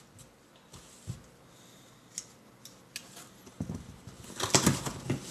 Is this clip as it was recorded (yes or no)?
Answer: yes